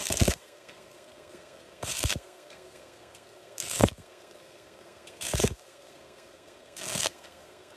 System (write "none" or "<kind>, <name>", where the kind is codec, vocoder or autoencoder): codec, SNAC